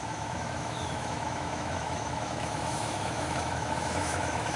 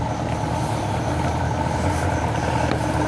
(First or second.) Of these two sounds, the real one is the second